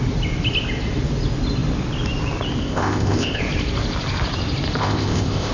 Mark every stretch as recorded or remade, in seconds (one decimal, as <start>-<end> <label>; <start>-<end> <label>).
0.0-2.6 recorded; 2.6-3.4 remade; 3.4-4.8 recorded; 4.8-5.5 remade